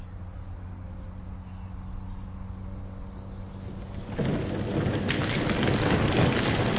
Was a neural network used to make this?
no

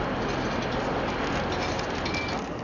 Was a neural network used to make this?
no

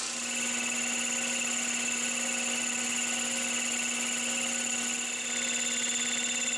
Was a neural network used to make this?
no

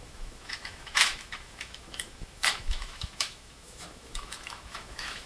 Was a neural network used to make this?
yes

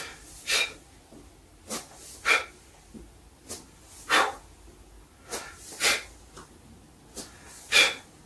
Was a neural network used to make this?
no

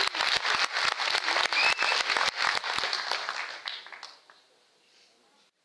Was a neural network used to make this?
no